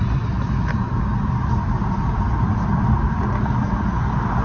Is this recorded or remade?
recorded